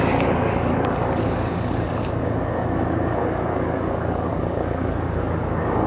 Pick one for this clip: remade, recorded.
remade